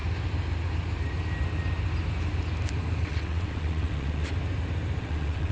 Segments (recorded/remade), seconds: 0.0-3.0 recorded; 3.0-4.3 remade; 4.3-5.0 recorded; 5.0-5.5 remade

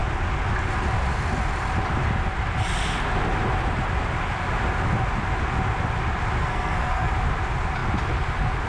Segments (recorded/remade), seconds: 0.0-6.4 recorded; 6.4-7.1 remade; 7.1-8.7 recorded

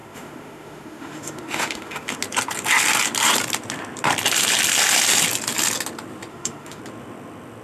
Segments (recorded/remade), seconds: 0.0-2.2 remade; 2.2-6.3 recorded; 6.3-6.8 remade; 6.8-7.6 recorded